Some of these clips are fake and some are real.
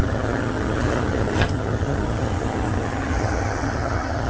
fake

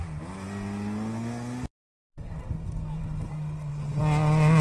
real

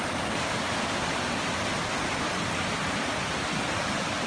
real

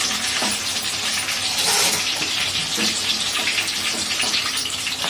fake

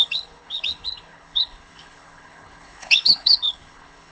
fake